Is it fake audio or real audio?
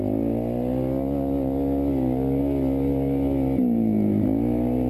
real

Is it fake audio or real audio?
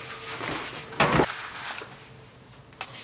real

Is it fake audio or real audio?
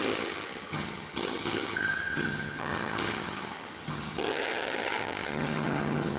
fake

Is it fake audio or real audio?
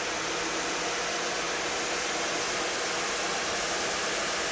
real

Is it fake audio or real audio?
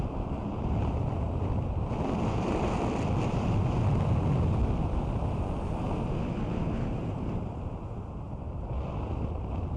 real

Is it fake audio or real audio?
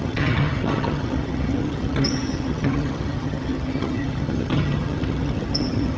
fake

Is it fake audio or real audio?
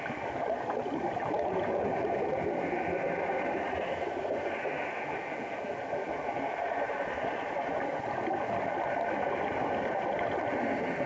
real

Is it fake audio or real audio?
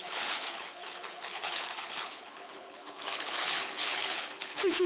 fake